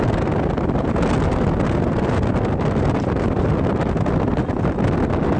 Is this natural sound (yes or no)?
yes